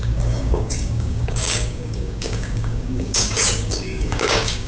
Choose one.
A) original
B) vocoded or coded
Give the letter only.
B